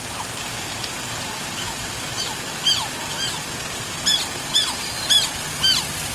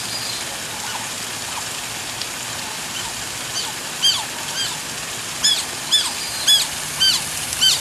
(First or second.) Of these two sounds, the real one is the second